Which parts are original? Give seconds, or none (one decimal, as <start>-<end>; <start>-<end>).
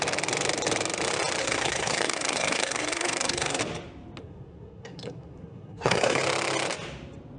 0.0-1.4; 3.6-4.2; 6.2-7.4